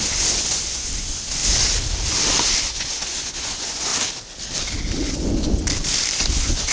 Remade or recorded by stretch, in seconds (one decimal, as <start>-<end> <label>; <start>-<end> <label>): 0.0-1.4 remade; 1.4-2.6 recorded; 2.6-3.9 remade; 3.9-5.1 recorded; 5.1-5.6 remade; 5.6-6.2 recorded; 6.2-6.7 remade